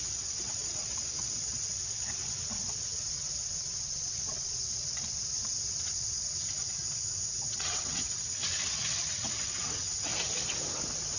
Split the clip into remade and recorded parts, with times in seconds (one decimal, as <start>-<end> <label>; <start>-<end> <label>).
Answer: 0.0-6.8 remade; 6.8-7.3 recorded; 7.3-10.1 remade; 10.1-11.2 recorded